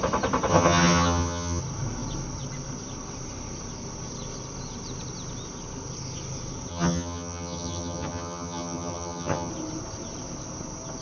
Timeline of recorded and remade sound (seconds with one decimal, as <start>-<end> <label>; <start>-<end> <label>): 0.0-0.5 recorded; 0.5-1.6 remade; 1.6-6.7 recorded; 6.7-9.5 remade; 9.5-11.0 recorded